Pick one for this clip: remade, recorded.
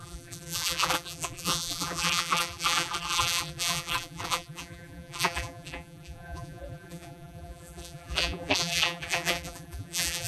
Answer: remade